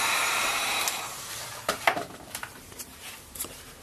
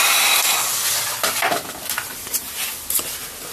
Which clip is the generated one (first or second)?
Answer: first